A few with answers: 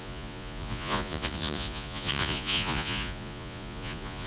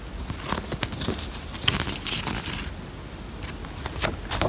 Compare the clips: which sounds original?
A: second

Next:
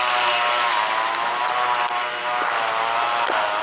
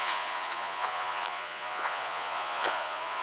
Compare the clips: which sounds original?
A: first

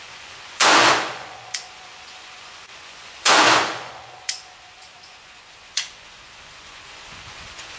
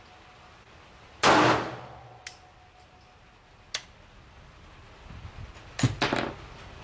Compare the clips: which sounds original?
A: second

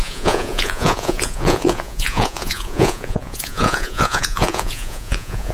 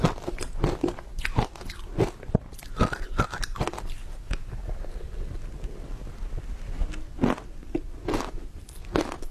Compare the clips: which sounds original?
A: second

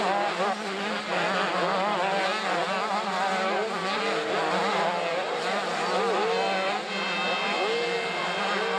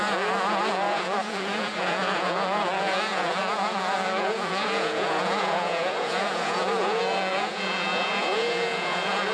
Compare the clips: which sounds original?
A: first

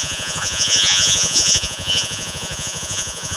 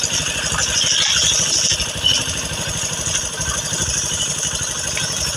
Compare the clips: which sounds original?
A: second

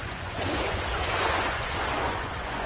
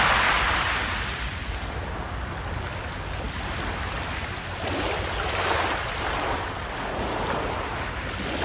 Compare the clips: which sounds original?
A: second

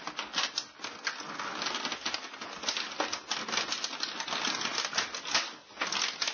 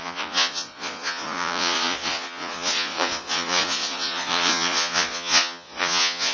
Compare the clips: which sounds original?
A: first